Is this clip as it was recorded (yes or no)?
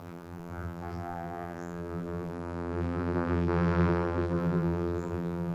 no